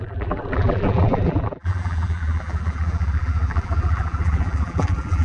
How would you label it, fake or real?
fake